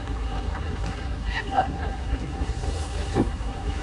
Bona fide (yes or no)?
no